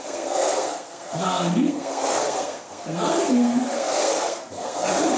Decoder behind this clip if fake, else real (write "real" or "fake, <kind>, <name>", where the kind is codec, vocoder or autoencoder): fake, codec, SNAC